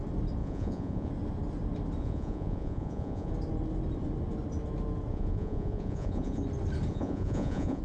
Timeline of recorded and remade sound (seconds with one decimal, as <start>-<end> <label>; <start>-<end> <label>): 0.0-0.4 recorded; 0.4-1.1 remade; 1.1-2.0 recorded; 2.0-3.3 remade; 3.3-5.1 recorded; 5.1-6.4 remade; 6.4-6.9 recorded; 6.9-7.8 remade